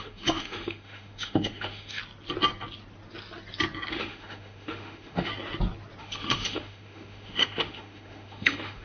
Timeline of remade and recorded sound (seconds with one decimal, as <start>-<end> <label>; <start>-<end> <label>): 0.0-2.0 remade; 2.0-3.9 recorded; 3.9-5.3 remade; 5.3-6.0 recorded; 6.0-8.8 remade